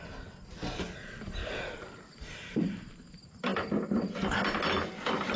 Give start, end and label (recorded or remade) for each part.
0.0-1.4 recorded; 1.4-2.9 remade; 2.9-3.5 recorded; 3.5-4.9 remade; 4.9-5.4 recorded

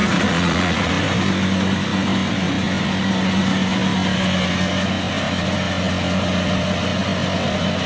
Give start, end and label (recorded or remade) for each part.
0.0-0.9 remade; 0.9-7.9 recorded

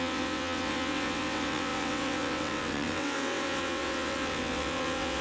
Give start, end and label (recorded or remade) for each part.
0.0-5.2 remade